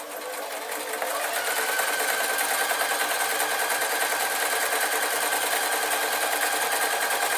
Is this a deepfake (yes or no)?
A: no